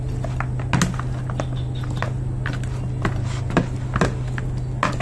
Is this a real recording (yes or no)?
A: yes